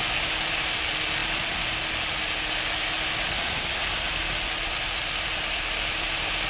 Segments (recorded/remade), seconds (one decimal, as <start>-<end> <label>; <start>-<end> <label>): 0.0-3.8 recorded; 3.8-6.5 remade